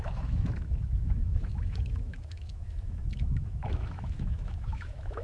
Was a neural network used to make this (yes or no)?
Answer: yes